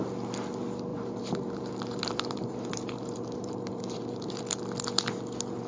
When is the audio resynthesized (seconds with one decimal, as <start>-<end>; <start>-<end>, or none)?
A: 0.9-4.3